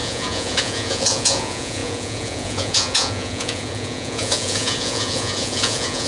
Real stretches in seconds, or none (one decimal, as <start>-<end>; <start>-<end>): none